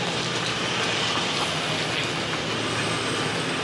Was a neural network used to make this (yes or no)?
no